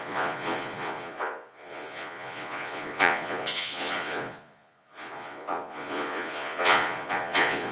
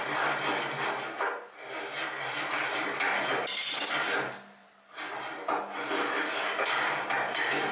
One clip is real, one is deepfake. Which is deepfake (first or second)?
first